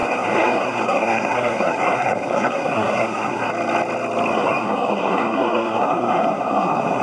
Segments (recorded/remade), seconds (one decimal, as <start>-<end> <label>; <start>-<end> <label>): 0.0-3.5 remade; 3.5-4.3 recorded; 4.3-7.0 remade

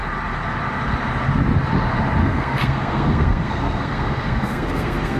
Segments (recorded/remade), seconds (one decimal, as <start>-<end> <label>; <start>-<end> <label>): 0.0-2.2 recorded; 2.2-5.2 remade

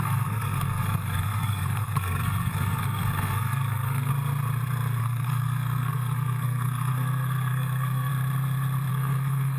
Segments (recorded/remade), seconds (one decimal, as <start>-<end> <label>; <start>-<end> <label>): 0.0-4.1 remade; 4.1-5.0 recorded; 5.0-8.1 remade; 8.1-8.9 recorded; 8.9-9.6 remade

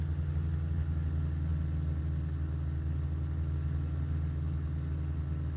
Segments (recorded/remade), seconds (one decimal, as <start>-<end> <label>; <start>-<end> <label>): 0.0-5.6 recorded

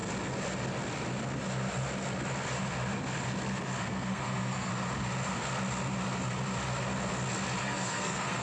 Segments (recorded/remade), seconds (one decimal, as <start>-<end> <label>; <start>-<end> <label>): 0.0-3.8 recorded; 3.8-4.7 remade; 4.7-7.6 recorded; 7.6-8.4 remade

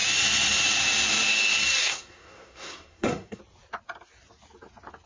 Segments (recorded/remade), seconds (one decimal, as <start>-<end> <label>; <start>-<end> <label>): 0.0-1.8 recorded; 1.8-3.4 remade; 3.4-5.1 recorded